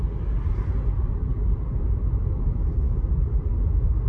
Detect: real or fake real